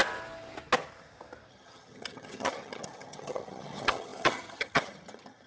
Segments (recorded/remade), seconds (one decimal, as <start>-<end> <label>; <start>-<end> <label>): 0.0-1.5 recorded; 1.5-5.5 remade